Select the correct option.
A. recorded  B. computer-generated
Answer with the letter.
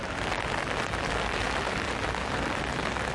A